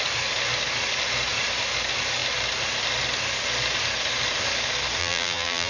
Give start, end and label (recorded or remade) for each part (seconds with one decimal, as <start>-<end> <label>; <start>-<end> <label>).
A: 0.0-5.0 recorded; 5.0-5.7 remade